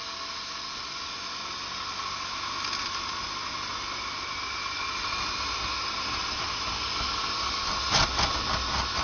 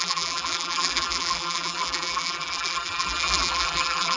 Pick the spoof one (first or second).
second